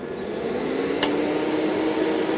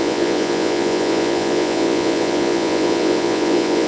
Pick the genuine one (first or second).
first